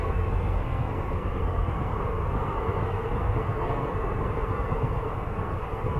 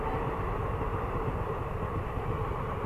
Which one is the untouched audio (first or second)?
second